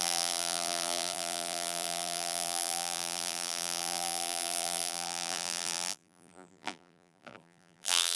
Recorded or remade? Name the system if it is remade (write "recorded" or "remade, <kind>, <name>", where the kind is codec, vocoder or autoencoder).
remade, vocoder, BigVGAN v2